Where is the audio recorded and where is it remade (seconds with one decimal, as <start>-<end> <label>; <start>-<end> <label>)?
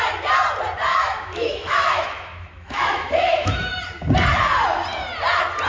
0.0-0.9 recorded; 0.9-3.7 remade; 3.7-5.7 recorded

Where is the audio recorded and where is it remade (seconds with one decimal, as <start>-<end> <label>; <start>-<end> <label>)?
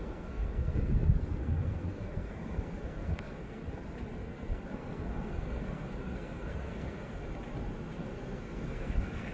0.0-3.6 remade; 3.6-4.1 recorded; 4.1-7.2 remade; 7.2-7.9 recorded; 7.9-9.3 remade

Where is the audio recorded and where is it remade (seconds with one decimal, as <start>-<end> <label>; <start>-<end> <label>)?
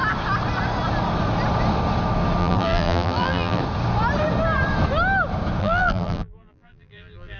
0.0-2.4 recorded; 2.4-3.6 remade; 3.6-5.6 recorded; 5.6-7.4 remade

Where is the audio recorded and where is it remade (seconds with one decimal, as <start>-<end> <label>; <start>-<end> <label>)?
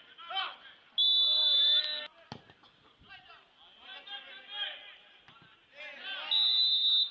0.0-7.1 recorded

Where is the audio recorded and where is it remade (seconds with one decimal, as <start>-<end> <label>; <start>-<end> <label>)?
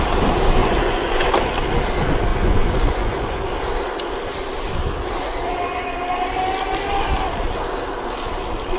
0.0-0.6 recorded; 0.6-1.3 remade; 1.3-2.3 recorded; 2.3-3.4 remade; 3.4-8.8 recorded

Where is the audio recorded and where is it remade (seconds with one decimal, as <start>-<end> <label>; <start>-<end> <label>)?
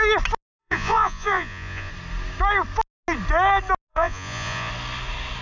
0.0-0.6 recorded; 0.6-1.9 remade; 1.9-3.9 recorded; 3.9-4.7 remade; 4.7-5.4 recorded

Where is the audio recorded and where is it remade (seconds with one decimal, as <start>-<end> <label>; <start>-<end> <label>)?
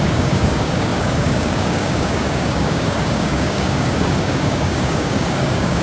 0.0-5.8 remade